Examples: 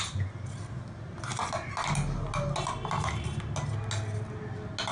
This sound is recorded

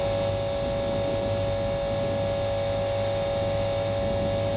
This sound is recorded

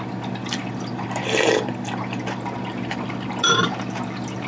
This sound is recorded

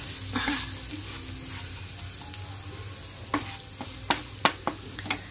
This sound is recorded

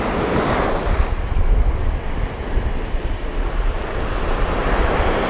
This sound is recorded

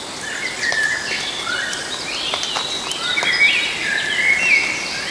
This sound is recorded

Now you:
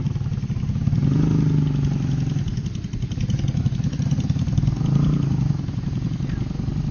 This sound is recorded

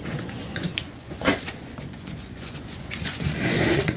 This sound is remade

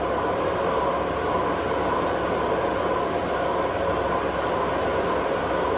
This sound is recorded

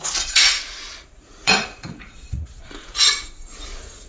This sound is remade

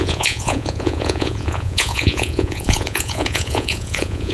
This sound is remade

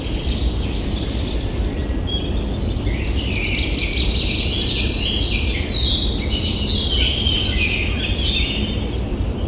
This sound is recorded